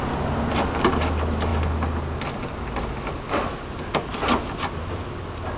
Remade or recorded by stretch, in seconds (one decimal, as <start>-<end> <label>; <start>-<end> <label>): 0.0-5.6 recorded